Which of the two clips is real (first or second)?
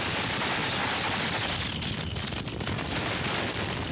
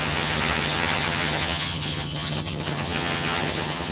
first